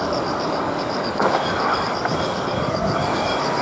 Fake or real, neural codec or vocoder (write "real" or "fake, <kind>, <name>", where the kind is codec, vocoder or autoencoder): fake, codec, DAC